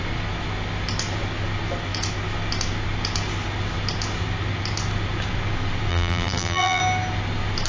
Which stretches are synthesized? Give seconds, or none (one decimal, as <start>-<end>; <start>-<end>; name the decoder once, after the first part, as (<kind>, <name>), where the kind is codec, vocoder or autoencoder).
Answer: 5.9-6.8 (vocoder, BigVGAN v2)